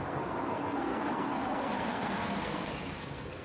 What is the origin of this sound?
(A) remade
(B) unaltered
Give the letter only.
A